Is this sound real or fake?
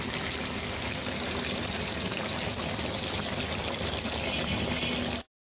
real